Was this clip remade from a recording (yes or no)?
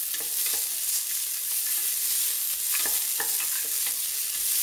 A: no